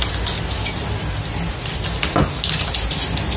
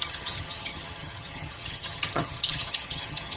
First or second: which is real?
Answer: first